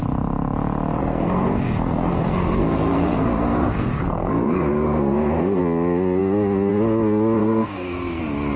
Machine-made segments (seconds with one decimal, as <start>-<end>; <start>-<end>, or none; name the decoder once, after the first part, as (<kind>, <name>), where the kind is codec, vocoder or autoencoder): 1.0-5.6 (codec, SNAC); 7.4-8.2